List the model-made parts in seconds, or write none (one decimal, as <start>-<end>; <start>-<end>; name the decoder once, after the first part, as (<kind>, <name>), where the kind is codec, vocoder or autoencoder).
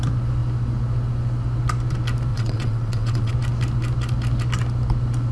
2.3-3.3 (vocoder, WaveNeXt)